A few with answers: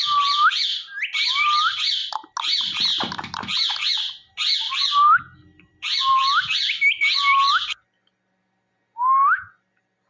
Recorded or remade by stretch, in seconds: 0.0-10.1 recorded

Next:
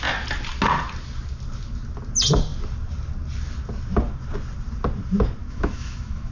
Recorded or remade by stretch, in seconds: 0.0-5.4 recorded; 5.4-6.3 remade